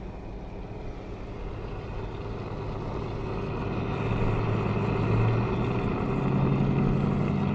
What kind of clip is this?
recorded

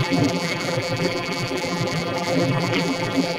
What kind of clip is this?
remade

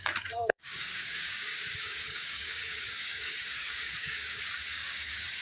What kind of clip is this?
remade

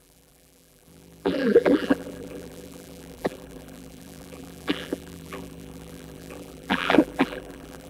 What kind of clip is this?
remade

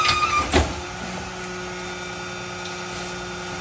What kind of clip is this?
recorded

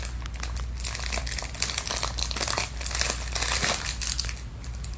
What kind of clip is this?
recorded